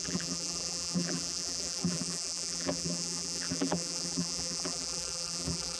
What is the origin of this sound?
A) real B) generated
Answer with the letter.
B